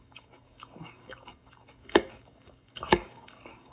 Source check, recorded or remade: remade